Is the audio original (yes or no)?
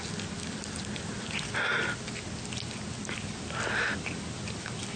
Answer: yes